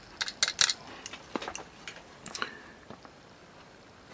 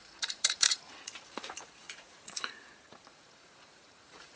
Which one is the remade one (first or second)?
second